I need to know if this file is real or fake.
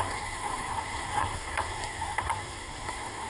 fake